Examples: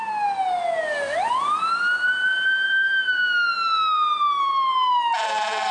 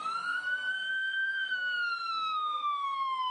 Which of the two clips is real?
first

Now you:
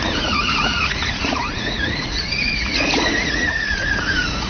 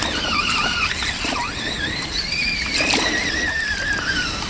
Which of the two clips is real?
second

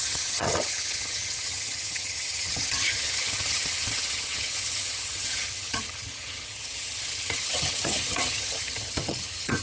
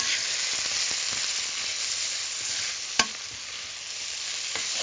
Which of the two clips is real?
second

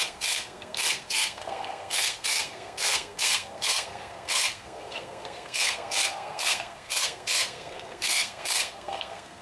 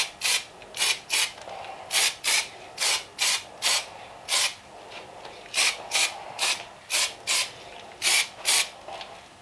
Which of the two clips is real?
second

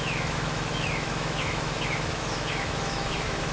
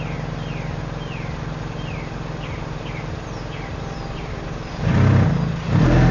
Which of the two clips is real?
second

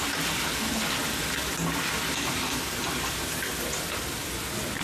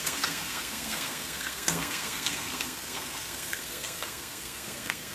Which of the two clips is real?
first